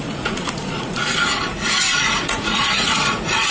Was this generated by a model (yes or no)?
yes